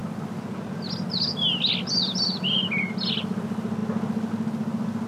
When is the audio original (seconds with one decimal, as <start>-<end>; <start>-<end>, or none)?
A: 0.0-5.1